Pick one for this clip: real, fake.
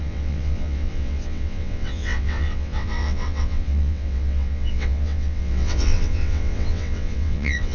fake